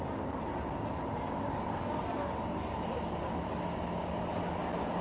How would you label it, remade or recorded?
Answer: recorded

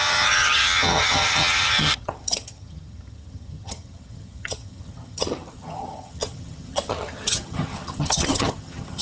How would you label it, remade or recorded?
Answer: remade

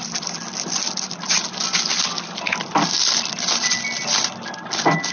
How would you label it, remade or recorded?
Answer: recorded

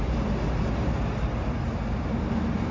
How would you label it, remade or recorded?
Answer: recorded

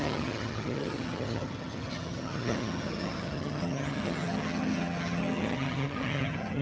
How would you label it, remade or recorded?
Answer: remade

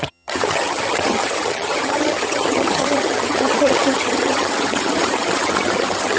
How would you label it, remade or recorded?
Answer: remade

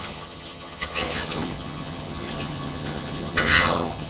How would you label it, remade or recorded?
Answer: remade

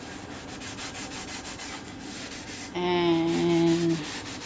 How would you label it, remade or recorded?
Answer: recorded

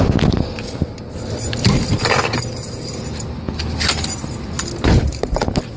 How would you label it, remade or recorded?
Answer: recorded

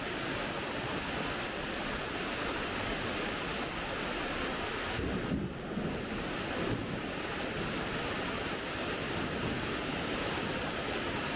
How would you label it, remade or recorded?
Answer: recorded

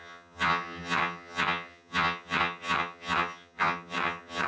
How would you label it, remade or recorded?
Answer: remade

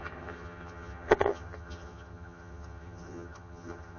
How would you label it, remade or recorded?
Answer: remade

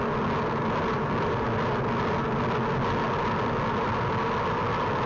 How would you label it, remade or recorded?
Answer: recorded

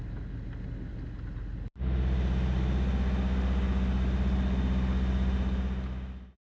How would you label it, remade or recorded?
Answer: recorded